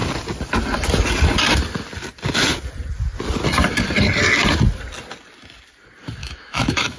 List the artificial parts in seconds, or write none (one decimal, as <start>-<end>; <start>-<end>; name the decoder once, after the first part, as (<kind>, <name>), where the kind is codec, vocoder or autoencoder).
6.2-7.0 (autoencoder, DAC-VAE)